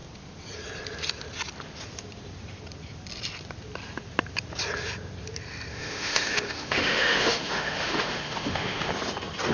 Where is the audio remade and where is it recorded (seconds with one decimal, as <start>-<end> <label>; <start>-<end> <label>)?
0.0-5.7 recorded; 5.7-8.9 remade; 8.9-9.5 recorded